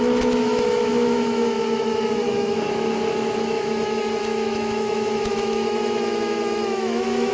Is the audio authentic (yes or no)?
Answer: no